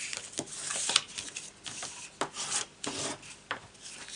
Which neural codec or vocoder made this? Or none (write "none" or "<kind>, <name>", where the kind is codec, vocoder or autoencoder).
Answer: none